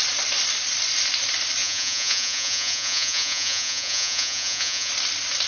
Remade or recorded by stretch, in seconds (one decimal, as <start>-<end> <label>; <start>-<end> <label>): 0.0-1.6 recorded; 1.6-4.9 remade; 4.9-5.5 recorded